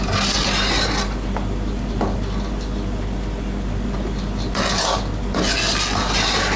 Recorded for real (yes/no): yes